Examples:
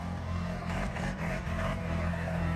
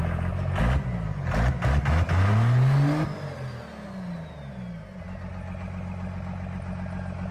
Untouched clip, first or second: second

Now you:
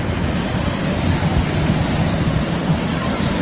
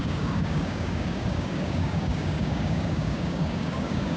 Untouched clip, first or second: first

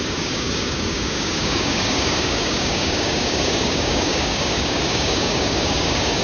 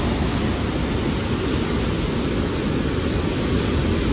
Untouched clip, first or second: second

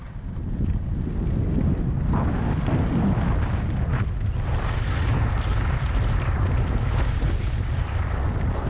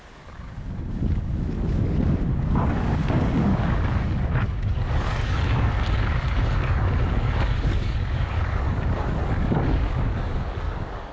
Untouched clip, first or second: first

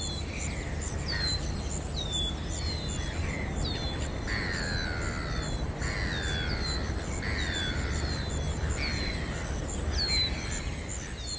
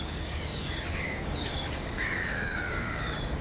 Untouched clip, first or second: first